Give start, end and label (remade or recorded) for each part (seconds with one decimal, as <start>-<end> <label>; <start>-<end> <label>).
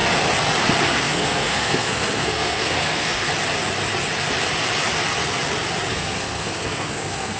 0.0-0.9 recorded; 0.9-3.3 remade; 3.3-5.9 recorded; 5.9-7.4 remade